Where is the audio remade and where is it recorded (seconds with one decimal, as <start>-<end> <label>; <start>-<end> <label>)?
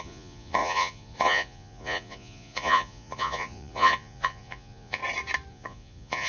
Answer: 0.0-5.0 remade; 5.0-5.5 recorded; 5.5-6.3 remade